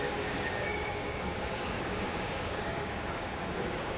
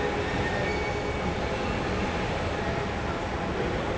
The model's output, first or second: first